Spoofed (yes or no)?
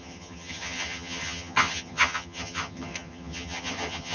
yes